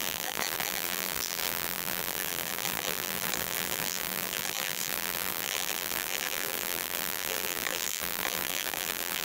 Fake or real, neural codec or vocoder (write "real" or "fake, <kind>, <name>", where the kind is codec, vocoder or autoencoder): fake, vocoder, BigVGAN v2